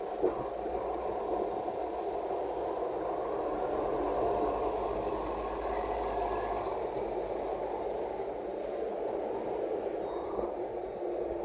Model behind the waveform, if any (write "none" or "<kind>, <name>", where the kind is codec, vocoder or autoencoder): none